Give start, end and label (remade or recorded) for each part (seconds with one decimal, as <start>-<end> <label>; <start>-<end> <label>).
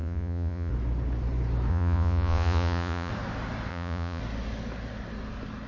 0.0-0.7 remade; 0.7-1.7 recorded; 1.7-3.1 remade; 3.1-3.7 recorded; 3.7-4.2 remade; 4.2-5.7 recorded